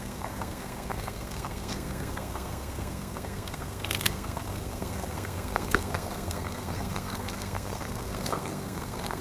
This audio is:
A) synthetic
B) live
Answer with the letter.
A